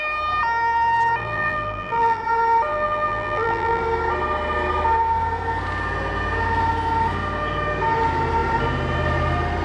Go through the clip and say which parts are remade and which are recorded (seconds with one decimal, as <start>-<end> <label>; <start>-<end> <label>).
0.0-1.2 recorded; 1.2-2.2 remade; 2.2-2.7 recorded; 2.7-3.8 remade; 3.8-9.6 recorded